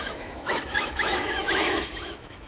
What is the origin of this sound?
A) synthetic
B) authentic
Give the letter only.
A